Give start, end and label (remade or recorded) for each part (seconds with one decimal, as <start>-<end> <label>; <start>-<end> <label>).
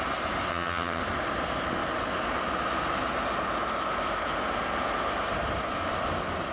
0.0-0.5 recorded; 0.5-1.0 remade; 1.0-6.5 recorded